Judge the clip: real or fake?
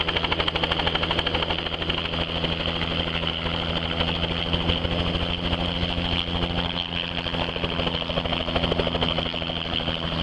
real